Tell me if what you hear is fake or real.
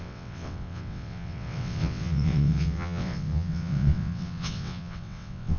fake